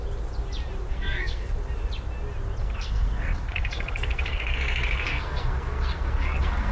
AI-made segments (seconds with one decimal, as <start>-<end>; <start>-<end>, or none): 0.9-1.5; 2.6-6.7